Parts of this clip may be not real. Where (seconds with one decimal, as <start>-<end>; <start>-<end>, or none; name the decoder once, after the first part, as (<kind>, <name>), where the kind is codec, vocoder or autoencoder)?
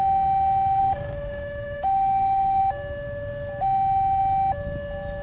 0.8-2.6 (autoencoder, DAC-VAE)